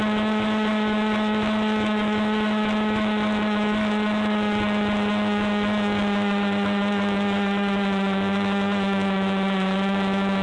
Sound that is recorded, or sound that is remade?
remade